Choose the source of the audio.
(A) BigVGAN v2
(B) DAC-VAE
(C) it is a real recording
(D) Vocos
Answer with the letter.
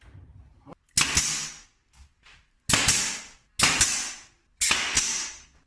C